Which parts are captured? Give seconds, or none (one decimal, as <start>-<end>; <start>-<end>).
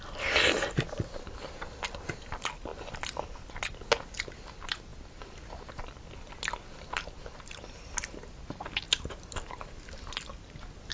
0.0-10.9